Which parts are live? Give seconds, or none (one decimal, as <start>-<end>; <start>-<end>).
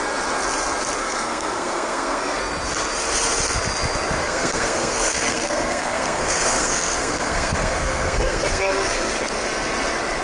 0.0-1.0; 2.4-4.2; 9.1-10.2